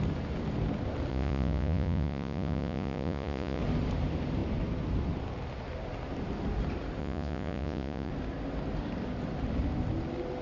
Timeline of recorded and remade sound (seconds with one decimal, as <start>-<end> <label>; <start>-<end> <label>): 0.0-1.1 recorded; 1.1-3.6 remade; 3.6-7.0 recorded; 7.0-8.1 remade; 8.1-10.4 recorded